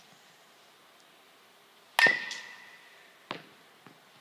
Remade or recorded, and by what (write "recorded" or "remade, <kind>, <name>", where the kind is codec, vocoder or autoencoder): recorded